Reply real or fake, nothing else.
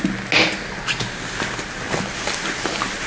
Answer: real